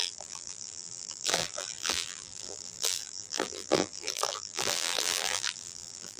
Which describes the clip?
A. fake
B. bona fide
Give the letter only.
A